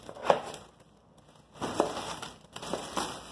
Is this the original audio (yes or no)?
yes